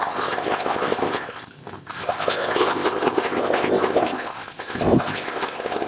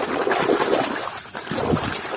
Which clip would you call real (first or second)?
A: second